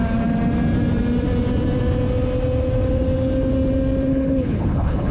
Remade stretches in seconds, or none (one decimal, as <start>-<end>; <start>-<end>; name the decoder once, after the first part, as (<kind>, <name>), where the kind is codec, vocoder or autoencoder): 4.1-5.1 (codec, HILCodec)